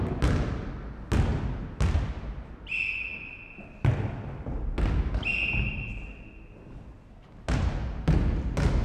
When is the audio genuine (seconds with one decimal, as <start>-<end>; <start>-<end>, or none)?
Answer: 0.0-8.8